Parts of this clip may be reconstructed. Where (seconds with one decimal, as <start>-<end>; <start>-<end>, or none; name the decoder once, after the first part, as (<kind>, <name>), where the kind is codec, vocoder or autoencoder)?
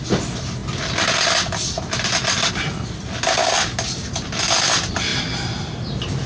none